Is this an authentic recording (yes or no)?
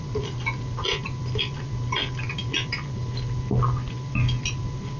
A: yes